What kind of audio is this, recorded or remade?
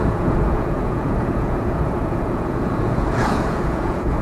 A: remade